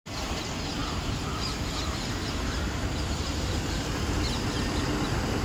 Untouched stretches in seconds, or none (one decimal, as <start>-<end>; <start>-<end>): 0.0-0.8; 3.5-5.4